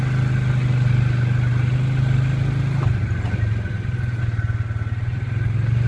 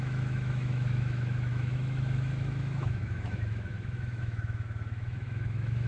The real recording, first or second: first